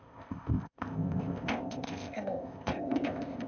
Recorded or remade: remade